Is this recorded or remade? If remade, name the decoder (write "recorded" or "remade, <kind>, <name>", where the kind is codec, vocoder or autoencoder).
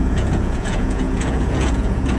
remade, vocoder, Vocos